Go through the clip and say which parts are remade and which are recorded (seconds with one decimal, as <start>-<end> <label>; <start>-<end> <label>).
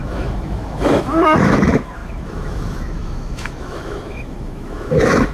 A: 0.0-5.3 remade